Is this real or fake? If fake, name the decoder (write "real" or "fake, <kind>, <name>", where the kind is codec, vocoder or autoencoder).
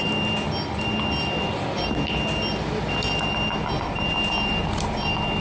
real